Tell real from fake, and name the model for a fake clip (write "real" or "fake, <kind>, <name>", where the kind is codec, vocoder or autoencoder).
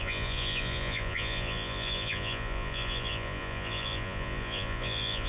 fake, vocoder, Vocos